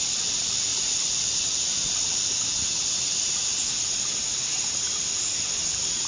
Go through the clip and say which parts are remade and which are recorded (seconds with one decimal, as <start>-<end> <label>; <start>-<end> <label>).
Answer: 0.0-6.1 recorded